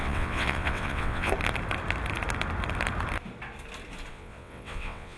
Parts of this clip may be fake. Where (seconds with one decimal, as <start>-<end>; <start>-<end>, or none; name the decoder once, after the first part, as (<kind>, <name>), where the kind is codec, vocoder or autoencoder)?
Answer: 0.0-1.3 (vocoder, WaveNeXt); 4.1-5.2